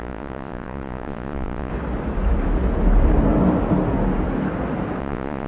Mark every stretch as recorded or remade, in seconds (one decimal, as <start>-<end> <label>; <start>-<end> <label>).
0.0-1.7 remade; 1.7-5.0 recorded; 5.0-5.5 remade